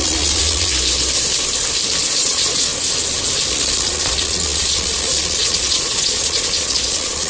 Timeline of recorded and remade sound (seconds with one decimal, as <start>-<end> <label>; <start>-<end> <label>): 0.0-0.7 remade; 0.7-2.0 recorded; 2.0-2.7 remade; 2.7-3.5 recorded; 3.5-7.3 remade